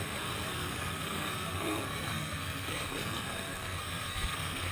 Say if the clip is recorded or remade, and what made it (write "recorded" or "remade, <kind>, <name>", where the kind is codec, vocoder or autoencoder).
remade, codec, SNAC